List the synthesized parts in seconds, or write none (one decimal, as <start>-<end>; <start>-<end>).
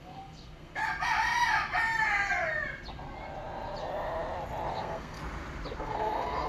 0.0-0.8; 4.7-5.2; 5.8-6.5